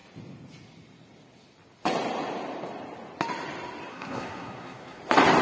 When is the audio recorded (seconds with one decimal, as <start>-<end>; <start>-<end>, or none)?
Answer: 0.0-3.9; 5.0-5.4